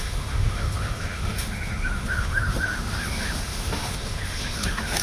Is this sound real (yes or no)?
no